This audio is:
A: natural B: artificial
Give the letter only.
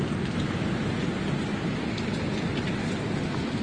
A